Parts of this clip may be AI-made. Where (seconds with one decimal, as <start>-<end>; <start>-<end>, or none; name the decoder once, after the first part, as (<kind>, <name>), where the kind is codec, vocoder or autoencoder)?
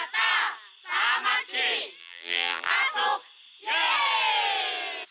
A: 2.0-2.7 (vocoder, BigVGAN v2)